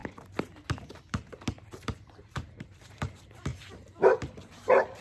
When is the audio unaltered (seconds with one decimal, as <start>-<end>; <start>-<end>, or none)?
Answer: 0.0-1.6; 3.5-4.5